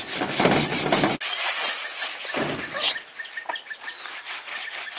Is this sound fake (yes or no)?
no